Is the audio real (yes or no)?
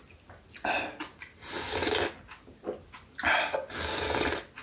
yes